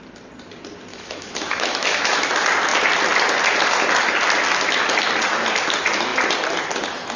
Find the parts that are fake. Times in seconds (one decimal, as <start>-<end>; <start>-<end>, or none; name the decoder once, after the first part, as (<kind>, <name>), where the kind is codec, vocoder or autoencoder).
0.9-2.2 (autoencoder, DAC-VAE)